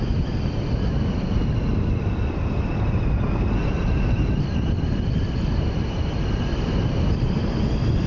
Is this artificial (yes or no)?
no